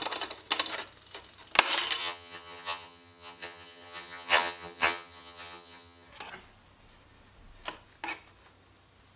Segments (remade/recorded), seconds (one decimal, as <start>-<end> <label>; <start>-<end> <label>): 0.0-2.0 recorded; 2.0-6.1 remade; 6.1-9.2 recorded